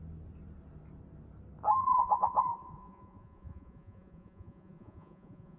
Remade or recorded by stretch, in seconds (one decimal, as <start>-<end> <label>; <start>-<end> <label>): 0.0-1.8 recorded; 1.8-5.6 remade